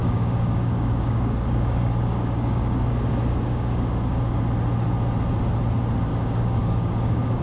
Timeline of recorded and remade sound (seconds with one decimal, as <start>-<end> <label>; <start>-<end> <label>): 0.0-4.4 remade; 4.4-6.1 recorded; 6.1-7.4 remade